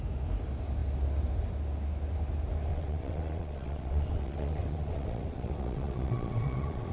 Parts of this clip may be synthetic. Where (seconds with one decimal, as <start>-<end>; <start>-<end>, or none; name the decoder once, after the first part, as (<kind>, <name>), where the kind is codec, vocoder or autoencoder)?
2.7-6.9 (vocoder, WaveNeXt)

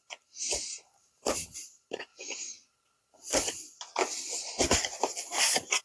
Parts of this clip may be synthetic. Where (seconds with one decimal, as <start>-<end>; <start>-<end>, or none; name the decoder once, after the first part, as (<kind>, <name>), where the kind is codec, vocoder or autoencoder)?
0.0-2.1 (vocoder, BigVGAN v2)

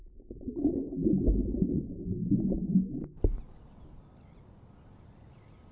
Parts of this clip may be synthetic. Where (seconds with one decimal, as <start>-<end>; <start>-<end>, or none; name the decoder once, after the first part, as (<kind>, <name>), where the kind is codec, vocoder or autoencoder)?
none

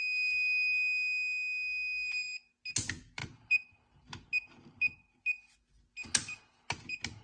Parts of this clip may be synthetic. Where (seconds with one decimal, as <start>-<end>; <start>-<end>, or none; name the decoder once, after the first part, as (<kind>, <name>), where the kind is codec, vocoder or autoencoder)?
none